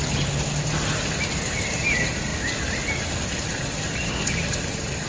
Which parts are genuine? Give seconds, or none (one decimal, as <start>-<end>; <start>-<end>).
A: 0.0-5.1

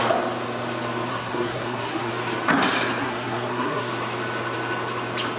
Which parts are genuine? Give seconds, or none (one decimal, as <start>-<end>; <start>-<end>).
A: 0.0-1.1; 2.1-3.0; 3.9-5.4